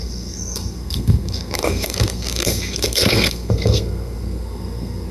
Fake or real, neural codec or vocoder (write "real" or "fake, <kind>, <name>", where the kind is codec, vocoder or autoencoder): fake, codec, SNAC